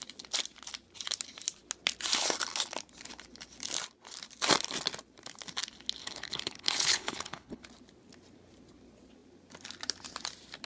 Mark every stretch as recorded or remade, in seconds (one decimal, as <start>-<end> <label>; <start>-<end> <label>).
0.0-6.0 recorded; 6.0-7.6 remade; 7.6-10.7 recorded